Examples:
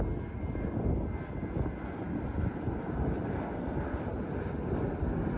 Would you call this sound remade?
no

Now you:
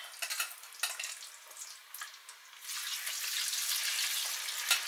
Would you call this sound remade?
no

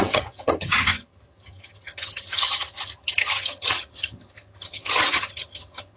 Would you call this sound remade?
yes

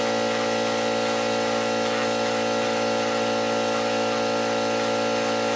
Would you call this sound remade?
no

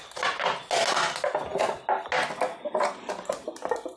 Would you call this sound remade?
no